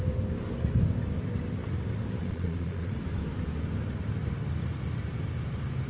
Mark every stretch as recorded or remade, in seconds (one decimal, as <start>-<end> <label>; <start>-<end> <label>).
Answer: 0.0-2.2 recorded; 2.2-2.9 remade; 2.9-5.9 recorded